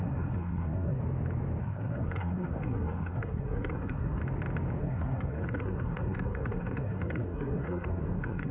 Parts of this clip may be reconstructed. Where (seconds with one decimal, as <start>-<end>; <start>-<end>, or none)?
0.0-1.0; 1.6-4.2; 4.8-8.5